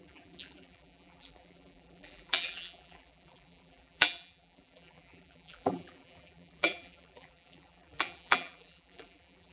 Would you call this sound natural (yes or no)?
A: no